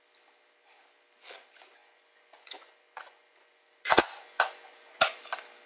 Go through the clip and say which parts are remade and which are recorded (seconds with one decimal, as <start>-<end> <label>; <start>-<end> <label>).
0.0-1.8 recorded; 1.8-5.2 remade; 5.2-5.7 recorded